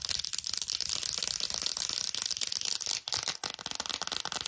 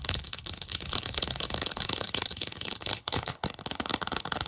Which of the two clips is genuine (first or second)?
first